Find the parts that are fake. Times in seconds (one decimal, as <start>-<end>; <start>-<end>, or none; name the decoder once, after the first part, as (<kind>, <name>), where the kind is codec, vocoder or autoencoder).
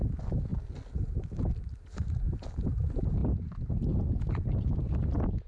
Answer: none